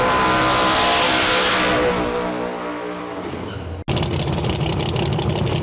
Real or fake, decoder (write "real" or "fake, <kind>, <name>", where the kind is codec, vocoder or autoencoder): real